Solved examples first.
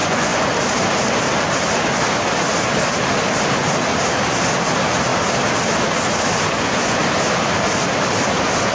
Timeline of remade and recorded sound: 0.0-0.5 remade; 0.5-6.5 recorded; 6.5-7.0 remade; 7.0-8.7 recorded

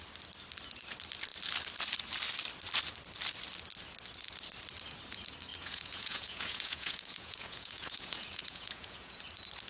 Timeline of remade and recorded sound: 0.0-5.5 recorded; 5.5-9.2 remade; 9.2-9.7 recorded

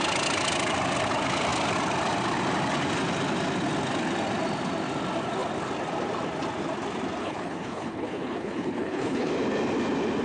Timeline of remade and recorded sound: 0.0-7.2 recorded; 7.2-9.3 remade; 9.3-10.2 recorded

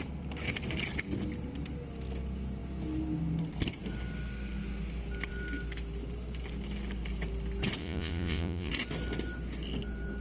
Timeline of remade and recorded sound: 0.0-7.8 recorded; 7.8-8.7 remade; 8.7-10.2 recorded

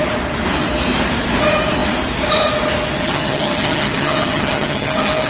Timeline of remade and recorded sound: 0.0-3.0 recorded; 3.0-5.3 remade

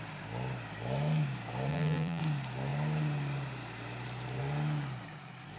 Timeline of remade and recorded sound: 0.0-1.7 recorded; 1.7-2.2 remade; 2.2-5.6 recorded